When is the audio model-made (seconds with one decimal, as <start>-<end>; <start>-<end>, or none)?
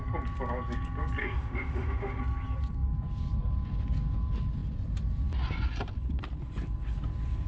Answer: 1.2-2.2